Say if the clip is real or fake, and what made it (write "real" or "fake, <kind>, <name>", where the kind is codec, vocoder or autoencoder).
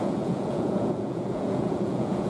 fake, vocoder, Vocos